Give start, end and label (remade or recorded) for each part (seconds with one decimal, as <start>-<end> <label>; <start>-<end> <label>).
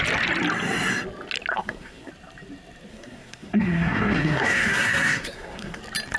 0.0-1.5 recorded; 1.5-2.1 remade; 2.1-2.9 recorded; 2.9-5.8 remade; 5.8-6.2 recorded